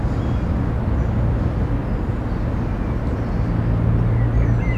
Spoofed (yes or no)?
no